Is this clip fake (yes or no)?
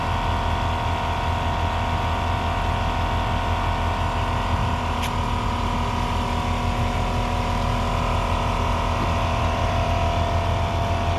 no